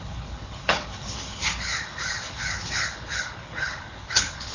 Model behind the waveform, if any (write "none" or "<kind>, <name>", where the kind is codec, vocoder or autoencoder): codec, HILCodec